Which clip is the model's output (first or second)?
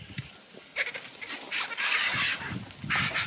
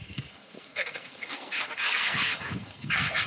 second